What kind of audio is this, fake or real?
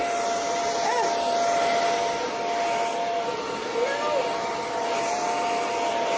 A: real